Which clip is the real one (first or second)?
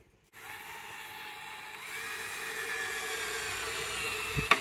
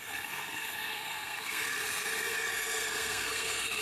first